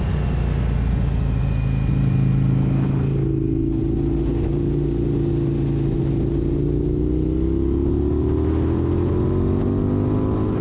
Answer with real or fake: real